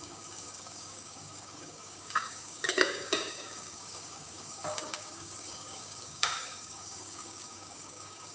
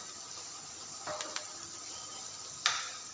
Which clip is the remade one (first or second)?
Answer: first